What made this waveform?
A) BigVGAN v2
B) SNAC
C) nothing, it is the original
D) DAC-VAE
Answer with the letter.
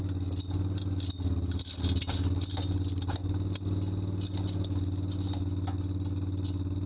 C